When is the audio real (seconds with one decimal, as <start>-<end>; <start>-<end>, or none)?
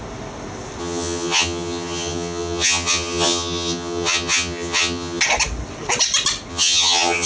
0.0-0.8; 5.2-6.5